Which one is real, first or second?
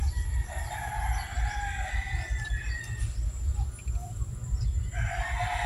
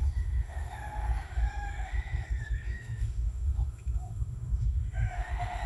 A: first